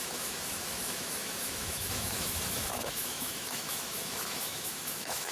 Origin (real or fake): fake